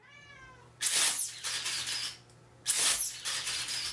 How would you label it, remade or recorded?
recorded